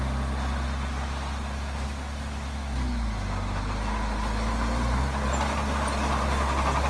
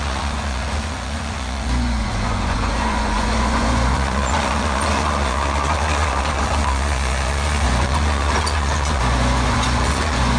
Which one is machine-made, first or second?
second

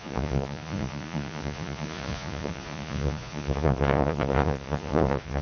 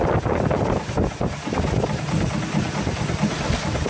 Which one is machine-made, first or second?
first